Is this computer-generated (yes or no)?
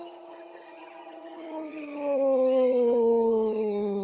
yes